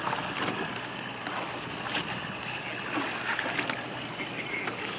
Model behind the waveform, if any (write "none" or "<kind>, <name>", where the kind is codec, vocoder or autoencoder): none